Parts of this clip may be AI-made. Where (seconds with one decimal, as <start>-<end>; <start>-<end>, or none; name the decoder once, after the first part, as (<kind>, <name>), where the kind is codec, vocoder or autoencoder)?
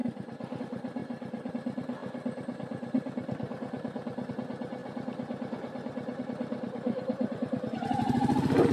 0.0-0.6 (vocoder, BigVGAN v2); 1.0-1.5; 2.0-4.3